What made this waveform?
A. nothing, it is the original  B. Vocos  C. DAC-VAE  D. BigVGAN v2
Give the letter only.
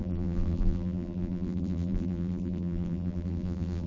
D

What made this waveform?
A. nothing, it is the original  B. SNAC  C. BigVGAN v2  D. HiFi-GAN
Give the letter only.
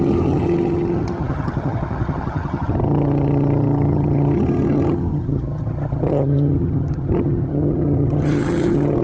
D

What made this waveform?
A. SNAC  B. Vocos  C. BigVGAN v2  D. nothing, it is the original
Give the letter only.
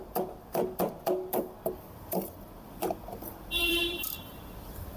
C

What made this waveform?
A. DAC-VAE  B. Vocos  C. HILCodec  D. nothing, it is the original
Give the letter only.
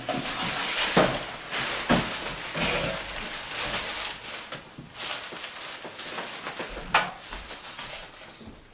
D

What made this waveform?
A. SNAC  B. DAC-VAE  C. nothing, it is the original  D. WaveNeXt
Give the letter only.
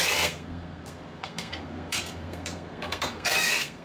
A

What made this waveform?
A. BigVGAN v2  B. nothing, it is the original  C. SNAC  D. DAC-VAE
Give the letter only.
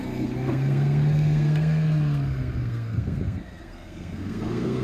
C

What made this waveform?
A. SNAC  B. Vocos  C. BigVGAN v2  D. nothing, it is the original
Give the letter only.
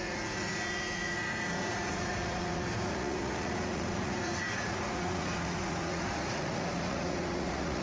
B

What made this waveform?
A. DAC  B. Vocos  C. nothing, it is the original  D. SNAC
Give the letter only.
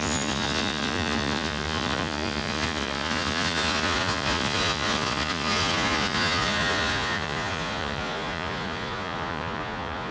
B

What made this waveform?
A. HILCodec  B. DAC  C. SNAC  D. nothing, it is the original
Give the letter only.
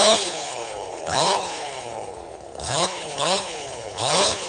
A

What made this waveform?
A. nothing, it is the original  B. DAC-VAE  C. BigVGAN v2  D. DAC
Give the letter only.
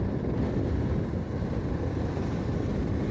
A